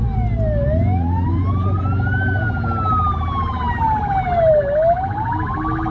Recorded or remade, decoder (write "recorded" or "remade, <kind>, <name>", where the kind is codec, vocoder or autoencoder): recorded